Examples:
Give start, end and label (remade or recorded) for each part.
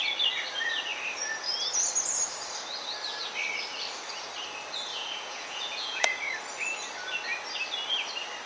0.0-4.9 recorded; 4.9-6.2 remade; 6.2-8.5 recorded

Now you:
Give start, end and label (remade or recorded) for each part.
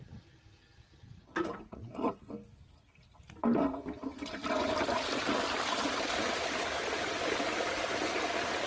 0.0-1.1 recorded; 1.1-2.2 remade; 2.2-8.7 recorded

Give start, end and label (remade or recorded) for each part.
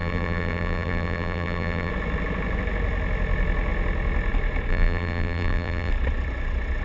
0.0-1.9 remade; 1.9-4.7 recorded; 4.7-5.9 remade; 5.9-6.8 recorded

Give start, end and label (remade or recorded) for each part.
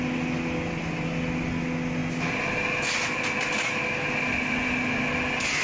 0.0-5.6 recorded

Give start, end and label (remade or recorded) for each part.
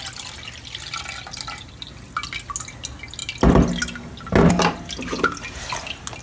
0.0-6.2 recorded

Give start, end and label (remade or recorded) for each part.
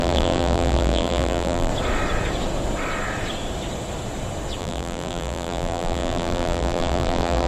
0.0-1.7 remade; 1.7-4.6 recorded; 4.6-7.5 remade